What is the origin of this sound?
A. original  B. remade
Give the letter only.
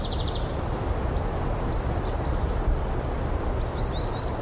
A